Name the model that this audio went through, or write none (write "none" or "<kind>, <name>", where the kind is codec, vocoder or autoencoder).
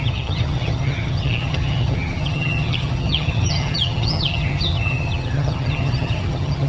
vocoder, HiFi-GAN